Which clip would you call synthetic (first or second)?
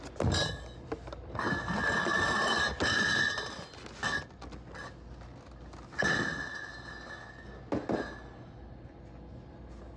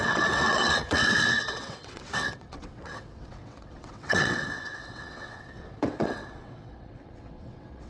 second